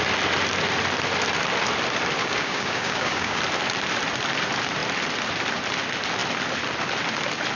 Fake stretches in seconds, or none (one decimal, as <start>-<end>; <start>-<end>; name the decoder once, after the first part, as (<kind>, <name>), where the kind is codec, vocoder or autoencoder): 2.2-3.4 (codec, DAC)

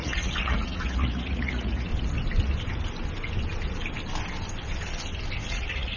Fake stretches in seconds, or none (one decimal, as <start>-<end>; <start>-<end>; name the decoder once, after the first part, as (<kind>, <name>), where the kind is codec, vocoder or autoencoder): 0.0-1.9 (vocoder, Vocos); 5.5-6.0

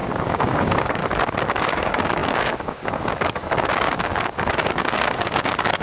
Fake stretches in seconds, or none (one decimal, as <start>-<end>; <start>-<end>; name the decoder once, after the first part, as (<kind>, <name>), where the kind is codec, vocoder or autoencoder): 0.0-1.0 (codec, DAC); 1.6-5.8

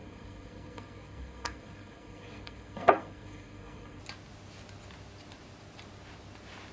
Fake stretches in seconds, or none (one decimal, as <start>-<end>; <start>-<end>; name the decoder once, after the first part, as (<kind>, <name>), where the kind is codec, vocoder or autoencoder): 0.0-4.0 (codec, SNAC)

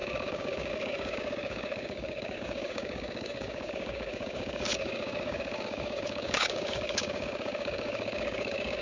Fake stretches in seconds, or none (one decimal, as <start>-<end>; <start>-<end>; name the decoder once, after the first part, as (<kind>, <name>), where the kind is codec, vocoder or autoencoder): 0.0-8.8 (codec, DAC)

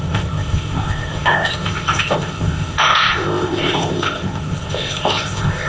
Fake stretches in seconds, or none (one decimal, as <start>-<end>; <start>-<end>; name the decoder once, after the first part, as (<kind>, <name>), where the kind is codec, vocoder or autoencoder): 0.0-5.7 (codec, ZipCodec)

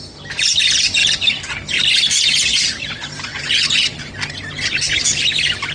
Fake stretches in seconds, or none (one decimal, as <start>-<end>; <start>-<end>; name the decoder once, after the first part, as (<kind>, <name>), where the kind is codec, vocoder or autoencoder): 3.3-4.1 (vocoder, Vocos)